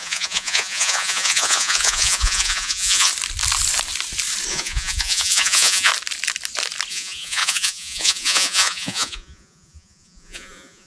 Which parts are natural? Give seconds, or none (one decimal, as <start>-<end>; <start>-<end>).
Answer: 3.1-4.5; 5.9-6.9